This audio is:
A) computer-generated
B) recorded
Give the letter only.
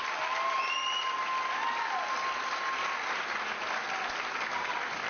B